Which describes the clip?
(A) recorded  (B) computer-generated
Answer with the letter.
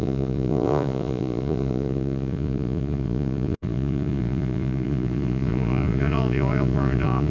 B